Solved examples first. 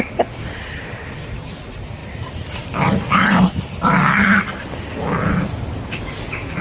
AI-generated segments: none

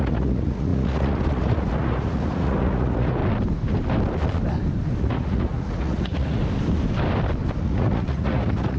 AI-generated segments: 0.0-3.2 (vocoder, Vocos); 5.0-6.4; 7.6-8.8

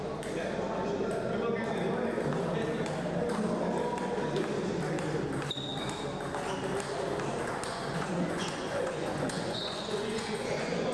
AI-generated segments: 7.7-10.9 (vocoder, Vocos)

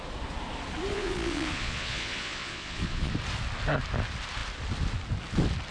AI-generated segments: 0.9-3.1 (vocoder, Vocos)

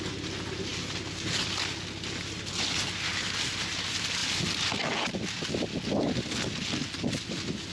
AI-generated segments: none

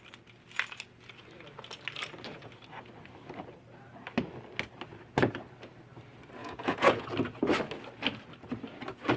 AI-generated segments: 6.4-7.1 (vocoder, Vocos)

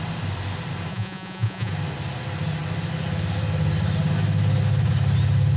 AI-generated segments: 0.9-1.7 (vocoder, Vocos)

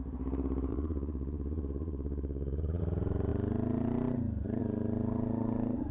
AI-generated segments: 0.7-2.8 (vocoder, Vocos)